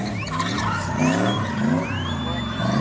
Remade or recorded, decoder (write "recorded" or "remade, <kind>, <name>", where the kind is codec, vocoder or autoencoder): recorded